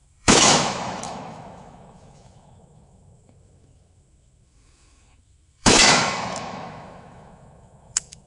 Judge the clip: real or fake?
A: fake